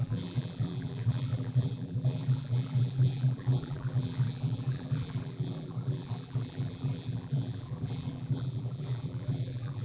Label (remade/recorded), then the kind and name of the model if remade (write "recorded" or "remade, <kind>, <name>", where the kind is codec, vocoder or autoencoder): remade, vocoder, BigVGAN v2